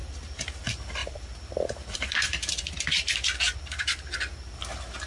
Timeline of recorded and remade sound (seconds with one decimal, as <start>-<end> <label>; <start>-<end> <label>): 0.0-0.6 remade; 0.6-1.0 recorded; 1.0-4.1 remade; 4.1-5.1 recorded